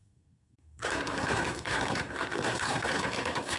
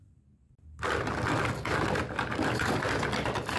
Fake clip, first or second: first